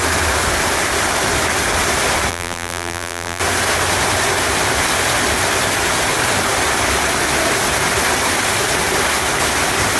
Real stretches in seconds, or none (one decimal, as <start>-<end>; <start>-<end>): 0.0-2.3; 3.4-10.0